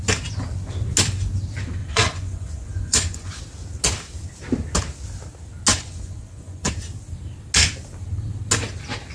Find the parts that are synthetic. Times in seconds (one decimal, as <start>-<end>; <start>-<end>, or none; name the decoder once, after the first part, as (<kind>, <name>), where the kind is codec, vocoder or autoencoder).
1.8-3.4 (vocoder, Vocos); 5.7-6.7